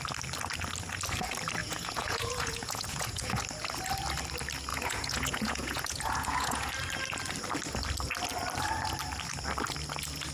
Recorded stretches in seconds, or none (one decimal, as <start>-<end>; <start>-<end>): 0.0-1.6; 3.4-4.7; 6.7-10.3